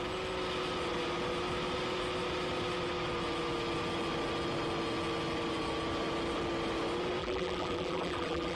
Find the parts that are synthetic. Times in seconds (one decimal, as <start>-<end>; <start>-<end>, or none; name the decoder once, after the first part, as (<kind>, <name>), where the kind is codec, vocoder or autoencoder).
7.2-8.6 (vocoder, BigVGAN v2)